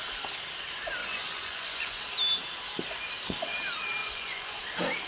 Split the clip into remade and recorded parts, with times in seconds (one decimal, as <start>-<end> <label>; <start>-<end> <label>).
0.0-1.0 recorded; 1.0-2.0 remade; 2.0-4.0 recorded; 4.0-4.6 remade; 4.6-5.1 recorded